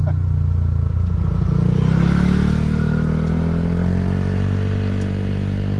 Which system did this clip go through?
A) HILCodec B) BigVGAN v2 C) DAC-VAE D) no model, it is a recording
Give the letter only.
D